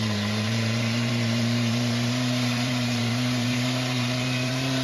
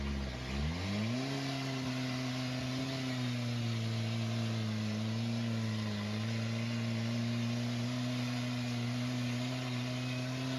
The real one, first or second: second